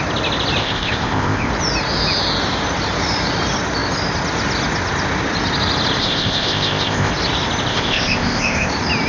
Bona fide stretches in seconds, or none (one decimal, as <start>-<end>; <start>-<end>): 0.0-0.6; 1.5-6.0; 7.1-7.7; 8.7-9.1